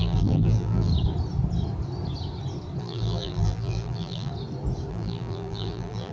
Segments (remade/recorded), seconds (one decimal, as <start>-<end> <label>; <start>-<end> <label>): 0.0-0.9 remade; 0.9-2.8 recorded; 2.8-4.3 remade; 4.3-4.9 recorded; 4.9-6.1 remade

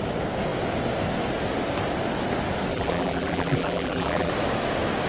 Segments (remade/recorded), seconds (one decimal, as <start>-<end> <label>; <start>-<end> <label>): 0.0-2.7 recorded; 2.7-4.3 remade; 4.3-5.1 recorded

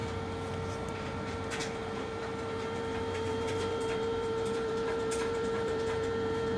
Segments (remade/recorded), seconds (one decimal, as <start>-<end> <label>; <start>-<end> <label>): 0.0-0.9 recorded; 0.9-6.6 remade

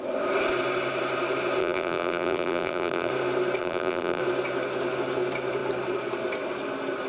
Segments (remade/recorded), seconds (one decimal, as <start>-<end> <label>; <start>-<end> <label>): 0.0-1.6 recorded; 1.6-3.1 remade; 3.1-3.6 recorded; 3.6-4.2 remade; 4.2-7.1 recorded

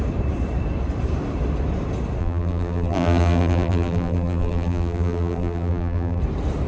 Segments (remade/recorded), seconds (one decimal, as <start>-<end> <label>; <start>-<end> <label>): 0.0-2.2 recorded; 2.2-6.2 remade; 6.2-6.7 recorded

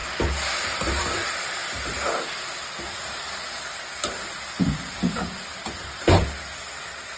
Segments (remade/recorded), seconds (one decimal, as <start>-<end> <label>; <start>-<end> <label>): 0.0-1.6 recorded; 1.6-2.6 remade; 2.6-7.2 recorded

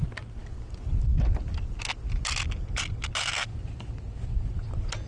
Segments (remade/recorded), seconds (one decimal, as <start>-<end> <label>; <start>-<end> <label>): 0.0-3.5 recorded; 3.5-4.3 remade; 4.3-5.1 recorded

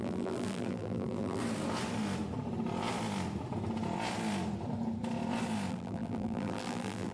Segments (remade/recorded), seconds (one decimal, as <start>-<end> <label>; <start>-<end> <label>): 0.0-1.4 remade; 1.4-5.7 recorded; 5.7-7.1 remade